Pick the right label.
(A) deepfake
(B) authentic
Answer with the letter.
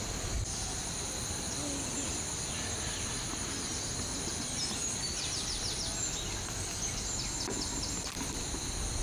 B